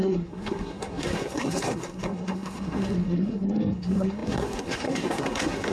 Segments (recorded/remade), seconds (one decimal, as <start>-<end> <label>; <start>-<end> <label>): 0.0-5.7 remade